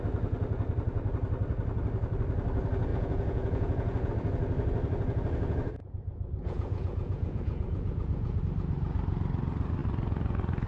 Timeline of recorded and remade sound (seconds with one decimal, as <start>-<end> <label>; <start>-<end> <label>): 0.0-2.9 recorded; 2.9-4.1 remade; 4.1-5.8 recorded; 5.8-8.4 remade; 8.4-10.7 recorded